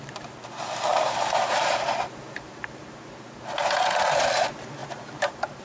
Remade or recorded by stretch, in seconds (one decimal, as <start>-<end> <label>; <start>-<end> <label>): 0.0-0.9 recorded; 0.9-3.1 remade; 3.1-4.8 recorded; 4.8-5.6 remade